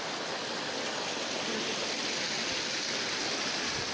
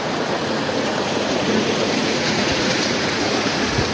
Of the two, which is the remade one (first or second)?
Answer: second